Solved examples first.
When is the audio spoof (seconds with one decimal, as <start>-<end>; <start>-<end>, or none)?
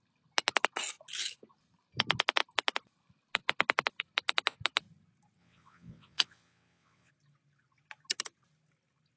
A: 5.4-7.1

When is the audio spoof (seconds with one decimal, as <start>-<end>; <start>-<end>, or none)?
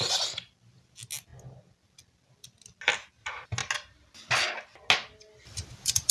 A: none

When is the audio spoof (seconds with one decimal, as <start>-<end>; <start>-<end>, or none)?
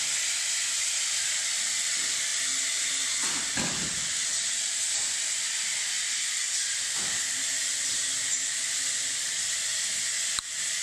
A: none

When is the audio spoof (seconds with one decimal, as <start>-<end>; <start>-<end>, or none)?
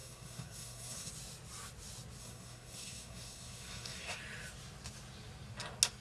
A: 0.0-1.1; 2.2-4.2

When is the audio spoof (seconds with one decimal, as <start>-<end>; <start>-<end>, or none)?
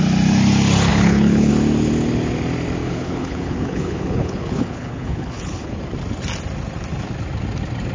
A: 0.9-1.5; 2.8-5.8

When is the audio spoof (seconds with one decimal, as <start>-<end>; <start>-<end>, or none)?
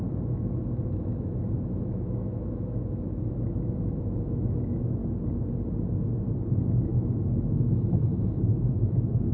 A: 0.0-5.0; 6.5-9.3